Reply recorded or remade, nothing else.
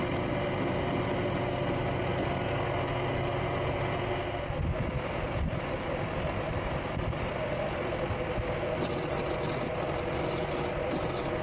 recorded